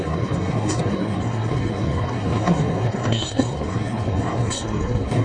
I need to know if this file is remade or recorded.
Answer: remade